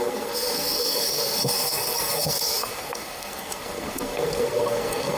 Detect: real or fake fake